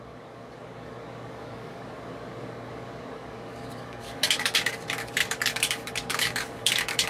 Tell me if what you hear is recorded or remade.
remade